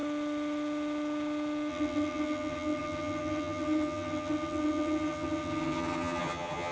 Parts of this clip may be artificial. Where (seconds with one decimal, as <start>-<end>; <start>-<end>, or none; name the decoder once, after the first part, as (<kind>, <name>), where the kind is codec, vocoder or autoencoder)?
1.7-6.7 (vocoder, HiFi-GAN)